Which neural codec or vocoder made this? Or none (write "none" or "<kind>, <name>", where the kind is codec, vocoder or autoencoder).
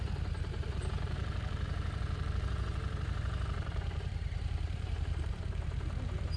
vocoder, BigVGAN v2